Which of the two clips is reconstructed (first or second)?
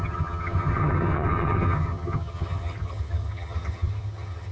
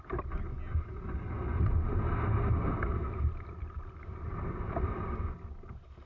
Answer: first